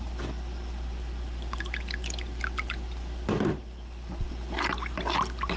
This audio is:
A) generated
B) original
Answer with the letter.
B